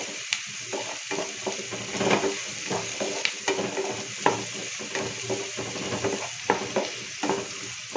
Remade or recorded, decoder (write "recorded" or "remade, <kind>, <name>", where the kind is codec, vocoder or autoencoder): recorded